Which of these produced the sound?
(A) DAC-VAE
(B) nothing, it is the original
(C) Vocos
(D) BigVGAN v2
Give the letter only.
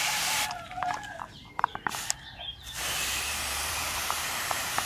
D